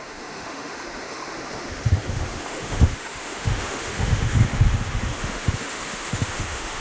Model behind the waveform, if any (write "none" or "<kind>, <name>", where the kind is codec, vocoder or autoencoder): autoencoder, DAC-VAE